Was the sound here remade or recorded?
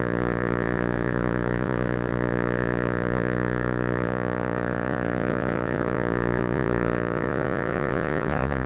remade